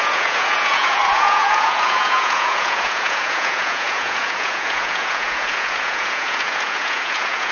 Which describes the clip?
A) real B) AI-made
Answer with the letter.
B